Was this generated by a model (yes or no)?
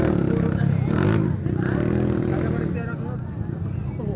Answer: no